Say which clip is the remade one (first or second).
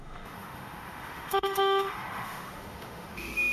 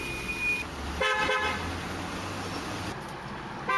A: first